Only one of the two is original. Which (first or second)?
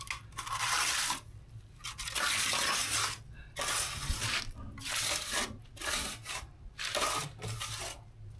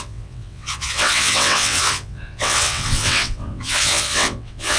first